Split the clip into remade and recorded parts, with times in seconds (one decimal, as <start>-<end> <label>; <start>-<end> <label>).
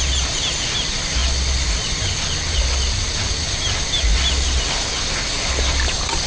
0.0-6.3 recorded